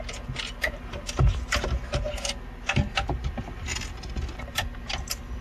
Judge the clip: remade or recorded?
recorded